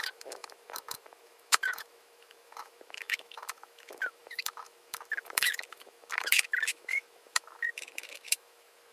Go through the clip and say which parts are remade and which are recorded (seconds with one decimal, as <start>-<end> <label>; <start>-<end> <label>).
0.0-8.9 remade